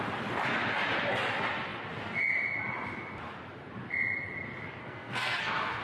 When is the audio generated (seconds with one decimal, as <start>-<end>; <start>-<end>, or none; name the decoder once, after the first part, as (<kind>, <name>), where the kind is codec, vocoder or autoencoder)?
4.8-5.8 (codec, SNAC)